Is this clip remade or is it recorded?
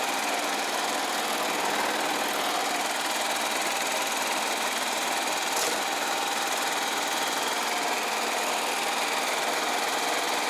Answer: recorded